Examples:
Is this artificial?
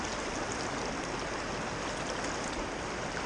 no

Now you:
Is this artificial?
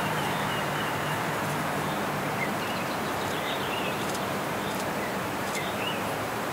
yes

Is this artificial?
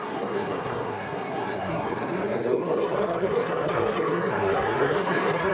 yes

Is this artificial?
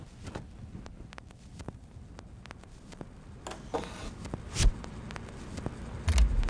no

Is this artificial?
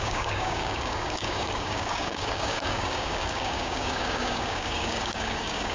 yes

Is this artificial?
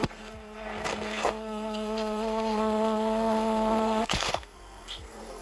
yes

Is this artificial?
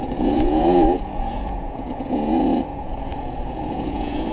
yes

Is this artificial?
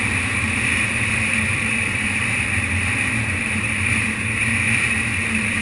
yes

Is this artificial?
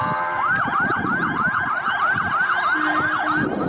no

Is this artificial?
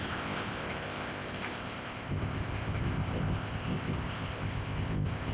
yes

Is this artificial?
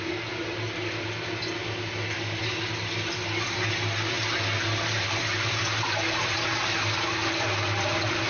no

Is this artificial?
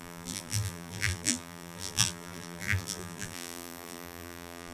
yes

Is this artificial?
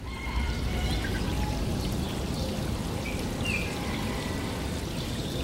yes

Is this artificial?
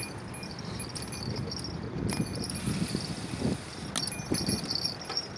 no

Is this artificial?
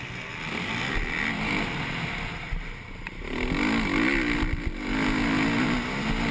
no